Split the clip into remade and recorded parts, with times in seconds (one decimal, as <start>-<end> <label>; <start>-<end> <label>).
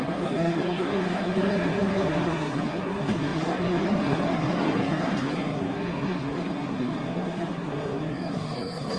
0.0-9.0 remade